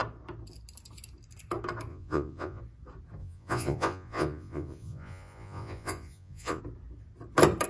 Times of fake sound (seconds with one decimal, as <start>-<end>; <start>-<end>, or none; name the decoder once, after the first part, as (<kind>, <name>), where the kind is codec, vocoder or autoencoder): 1.9-2.6 (vocoder, Vocos); 3.2-6.6

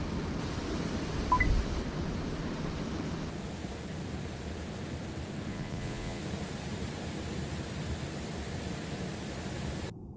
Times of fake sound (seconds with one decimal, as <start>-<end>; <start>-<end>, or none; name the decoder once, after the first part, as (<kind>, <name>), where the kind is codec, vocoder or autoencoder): 5.5-6.2 (vocoder, Vocos)

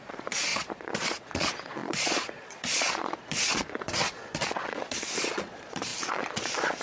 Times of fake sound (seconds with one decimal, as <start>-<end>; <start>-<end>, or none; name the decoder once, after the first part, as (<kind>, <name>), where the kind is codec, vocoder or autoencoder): 0.0-6.8 (vocoder, Vocos)

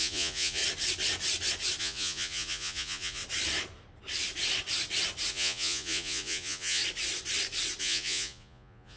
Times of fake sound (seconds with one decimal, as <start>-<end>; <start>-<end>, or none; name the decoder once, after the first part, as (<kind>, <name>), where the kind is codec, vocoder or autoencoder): 0.0-0.6 (vocoder, Vocos); 1.8-3.2; 5.3-6.8; 7.8-9.0

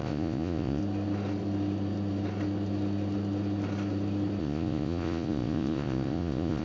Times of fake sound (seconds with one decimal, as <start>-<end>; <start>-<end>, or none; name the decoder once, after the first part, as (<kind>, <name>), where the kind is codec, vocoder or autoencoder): 0.0-0.8 (vocoder, Vocos); 4.4-6.6

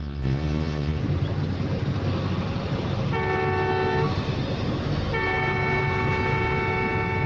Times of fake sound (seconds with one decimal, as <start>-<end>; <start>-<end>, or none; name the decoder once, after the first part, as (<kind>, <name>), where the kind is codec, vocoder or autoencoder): 0.0-1.0 (vocoder, Vocos)

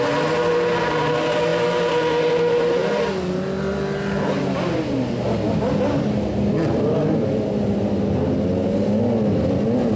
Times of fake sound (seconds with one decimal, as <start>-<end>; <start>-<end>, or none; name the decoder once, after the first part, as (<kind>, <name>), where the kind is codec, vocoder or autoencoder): none

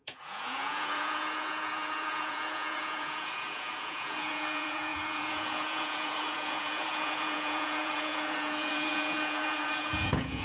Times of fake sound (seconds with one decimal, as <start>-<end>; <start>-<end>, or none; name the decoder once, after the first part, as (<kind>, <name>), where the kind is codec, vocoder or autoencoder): 0.0-10.4 (vocoder, Vocos)